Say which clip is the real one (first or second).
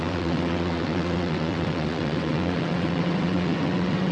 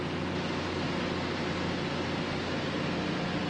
second